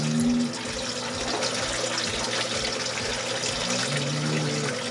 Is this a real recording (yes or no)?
yes